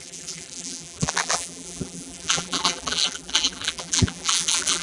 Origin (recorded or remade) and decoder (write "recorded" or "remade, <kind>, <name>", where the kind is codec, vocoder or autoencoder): remade, vocoder, BigVGAN v2